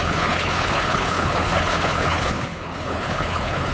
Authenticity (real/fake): fake